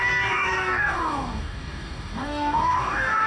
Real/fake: fake